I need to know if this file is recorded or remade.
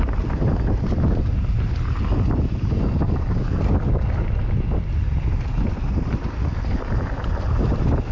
recorded